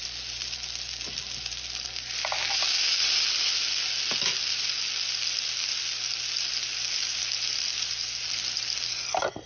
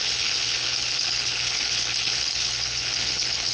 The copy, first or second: second